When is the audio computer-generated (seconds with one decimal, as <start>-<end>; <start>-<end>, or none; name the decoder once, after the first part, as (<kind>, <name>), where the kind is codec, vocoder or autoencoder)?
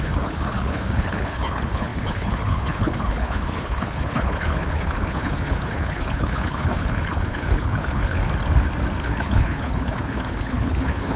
0.0-8.2 (codec, HILCodec); 9.0-11.2